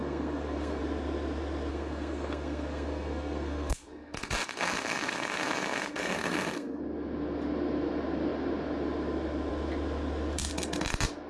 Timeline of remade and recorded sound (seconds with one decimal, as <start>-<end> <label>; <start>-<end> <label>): 0.0-0.8 remade; 0.8-1.7 recorded; 1.7-6.8 remade; 6.8-11.3 recorded